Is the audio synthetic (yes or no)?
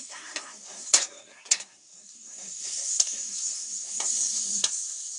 yes